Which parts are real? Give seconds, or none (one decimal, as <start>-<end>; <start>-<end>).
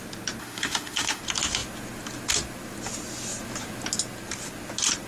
0.0-0.4; 1.2-5.1